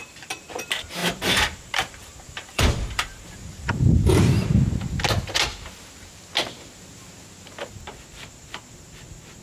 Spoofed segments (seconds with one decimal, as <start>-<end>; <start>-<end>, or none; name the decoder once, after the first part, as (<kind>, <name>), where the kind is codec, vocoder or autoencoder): 1.0-3.7 (vocoder, BigVGAN v2)